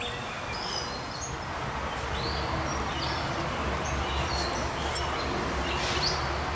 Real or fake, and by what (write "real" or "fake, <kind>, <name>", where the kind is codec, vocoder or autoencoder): real